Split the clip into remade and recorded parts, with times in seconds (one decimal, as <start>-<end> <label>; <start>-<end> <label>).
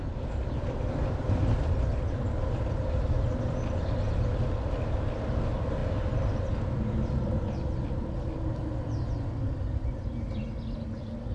0.0-11.3 recorded